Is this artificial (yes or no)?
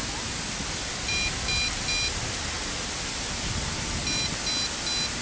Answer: no